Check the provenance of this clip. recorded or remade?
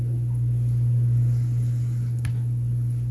recorded